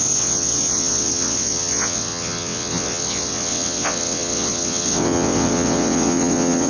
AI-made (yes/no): yes